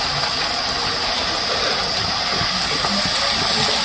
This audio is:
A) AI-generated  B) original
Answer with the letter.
B